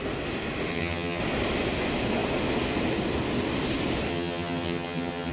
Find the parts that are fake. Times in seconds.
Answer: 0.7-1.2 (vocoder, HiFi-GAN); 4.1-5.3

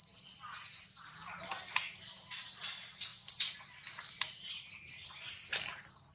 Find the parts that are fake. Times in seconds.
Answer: 0.0-1.5 (vocoder, BigVGAN v2)

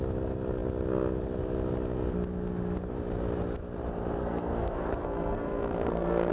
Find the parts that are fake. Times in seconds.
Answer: 4.2-6.3 (codec, SNAC)

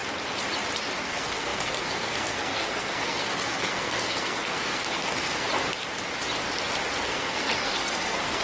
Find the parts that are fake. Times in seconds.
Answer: 1.0-5.5 (codec, SNAC); 7.0-8.4